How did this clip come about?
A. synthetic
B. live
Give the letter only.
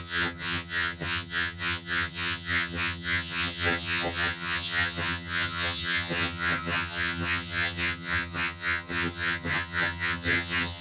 A